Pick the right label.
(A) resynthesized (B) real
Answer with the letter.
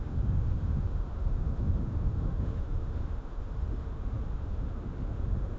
A